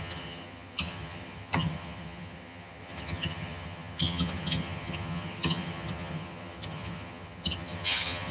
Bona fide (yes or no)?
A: no